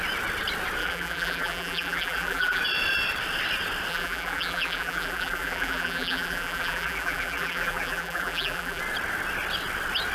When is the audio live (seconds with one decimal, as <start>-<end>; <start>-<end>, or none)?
0.0-0.8; 2.6-3.9; 8.8-10.1